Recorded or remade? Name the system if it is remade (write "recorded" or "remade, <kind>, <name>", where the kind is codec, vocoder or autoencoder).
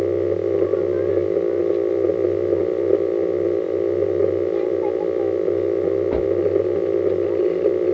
recorded